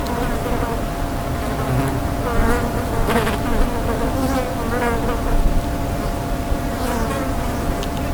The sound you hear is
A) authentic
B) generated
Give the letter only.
A